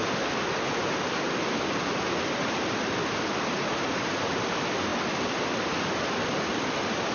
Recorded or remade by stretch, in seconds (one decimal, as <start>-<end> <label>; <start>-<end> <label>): 0.0-4.3 recorded; 4.3-7.1 remade